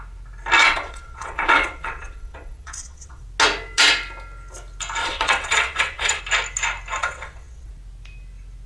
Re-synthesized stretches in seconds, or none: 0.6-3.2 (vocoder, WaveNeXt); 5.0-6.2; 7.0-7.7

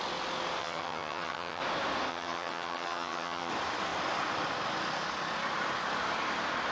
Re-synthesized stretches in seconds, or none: 0.6-1.6 (vocoder, HiFi-GAN); 2.1-3.5

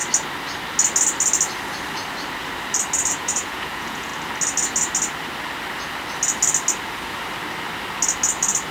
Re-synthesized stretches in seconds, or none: 3.1-4.1 (vocoder, Vocos)

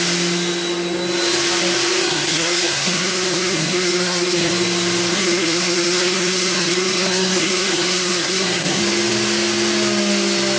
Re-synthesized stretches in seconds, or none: 2.0-4.5 (codec, SNAC); 5.1-8.8

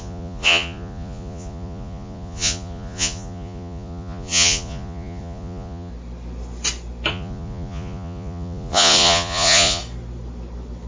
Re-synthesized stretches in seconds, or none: 0.0-5.9 (vocoder, Vocos); 7.1-9.8